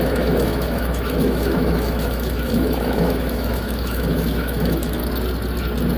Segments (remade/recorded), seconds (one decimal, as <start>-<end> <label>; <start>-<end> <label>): 0.0-5.0 remade; 5.0-6.0 recorded